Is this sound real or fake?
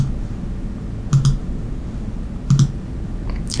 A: real